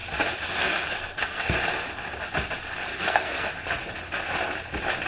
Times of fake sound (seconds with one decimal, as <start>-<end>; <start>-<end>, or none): 0.6-1.6; 2.9-3.5